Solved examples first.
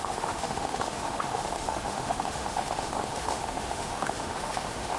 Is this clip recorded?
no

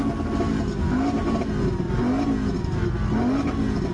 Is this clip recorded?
yes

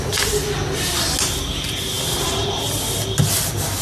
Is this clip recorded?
yes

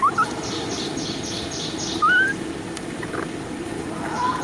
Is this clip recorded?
yes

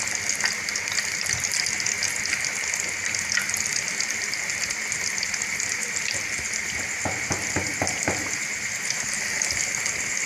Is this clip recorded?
yes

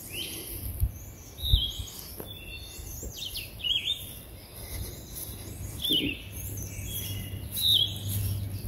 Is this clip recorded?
yes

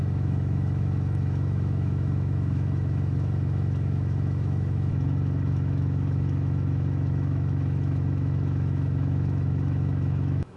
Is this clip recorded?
no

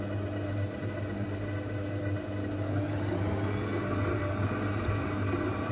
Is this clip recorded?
yes